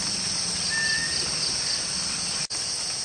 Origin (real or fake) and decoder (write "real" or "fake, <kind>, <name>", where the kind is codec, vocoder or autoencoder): real